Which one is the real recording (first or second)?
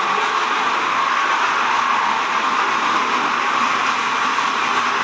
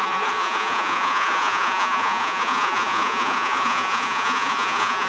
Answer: first